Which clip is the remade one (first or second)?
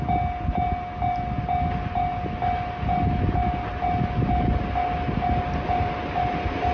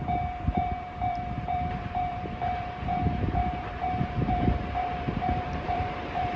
second